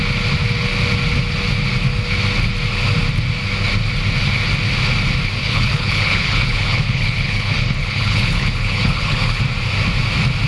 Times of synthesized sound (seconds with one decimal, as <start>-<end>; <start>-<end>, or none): 5.4-9.4